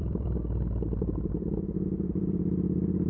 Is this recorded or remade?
remade